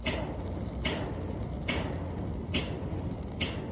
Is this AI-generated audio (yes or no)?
no